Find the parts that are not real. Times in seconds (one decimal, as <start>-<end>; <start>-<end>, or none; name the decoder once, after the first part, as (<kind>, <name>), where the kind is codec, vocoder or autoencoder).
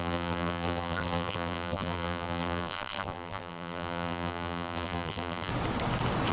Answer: 0.0-5.5 (vocoder, BigVGAN v2)